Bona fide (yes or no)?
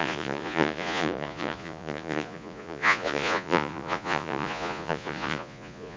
no